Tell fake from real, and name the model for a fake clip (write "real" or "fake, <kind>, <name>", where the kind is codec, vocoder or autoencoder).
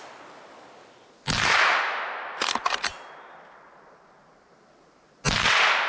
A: real